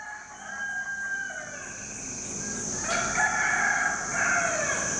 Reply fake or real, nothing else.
real